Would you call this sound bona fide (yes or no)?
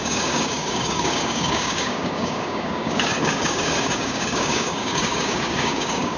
no